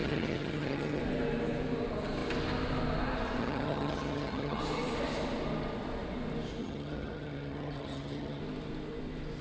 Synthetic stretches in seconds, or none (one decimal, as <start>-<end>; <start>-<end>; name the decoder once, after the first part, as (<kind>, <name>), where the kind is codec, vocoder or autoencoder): 0.0-1.0 (vocoder, HiFi-GAN); 3.4-4.6; 6.6-8.4